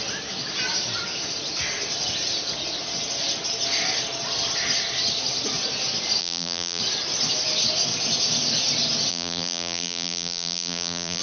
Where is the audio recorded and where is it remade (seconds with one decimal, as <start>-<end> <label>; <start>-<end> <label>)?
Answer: 0.0-6.2 recorded; 6.2-6.8 remade; 6.8-9.1 recorded; 9.1-11.2 remade